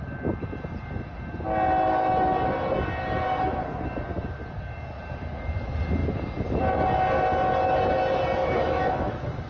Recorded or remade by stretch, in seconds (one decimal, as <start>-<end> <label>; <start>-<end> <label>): 0.0-8.4 recorded; 8.4-9.5 remade